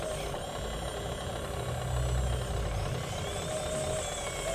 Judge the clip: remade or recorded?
recorded